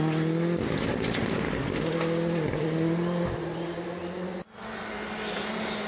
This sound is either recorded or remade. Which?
recorded